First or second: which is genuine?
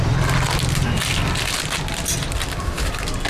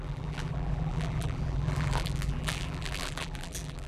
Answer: first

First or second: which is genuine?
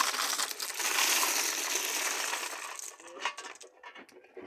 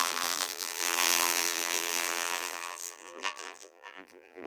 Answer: first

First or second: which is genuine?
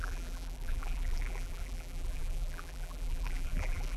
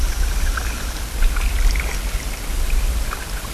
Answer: second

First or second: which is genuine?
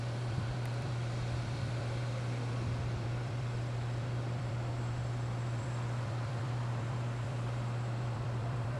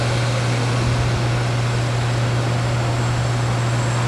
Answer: second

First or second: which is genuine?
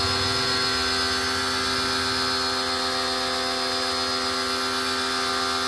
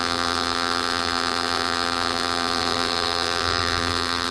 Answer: first